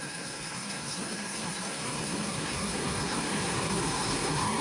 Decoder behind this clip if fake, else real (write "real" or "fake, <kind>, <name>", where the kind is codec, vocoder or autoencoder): fake, codec, SNAC